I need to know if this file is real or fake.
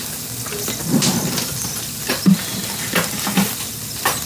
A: real